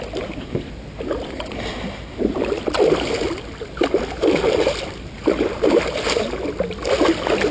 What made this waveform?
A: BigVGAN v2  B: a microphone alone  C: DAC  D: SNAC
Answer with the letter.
B